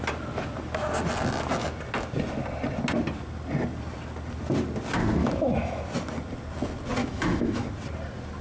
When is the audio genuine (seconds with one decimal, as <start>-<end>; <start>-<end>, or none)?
0.0-5.2; 5.8-7.0; 7.7-8.4